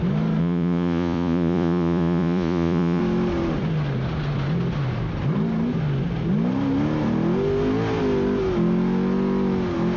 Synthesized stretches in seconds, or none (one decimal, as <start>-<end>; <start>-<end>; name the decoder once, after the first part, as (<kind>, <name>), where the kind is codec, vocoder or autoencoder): 0.4-3.0 (vocoder, Vocos)